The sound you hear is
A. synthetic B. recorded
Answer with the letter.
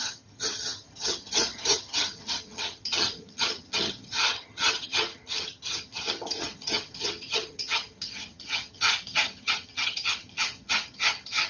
A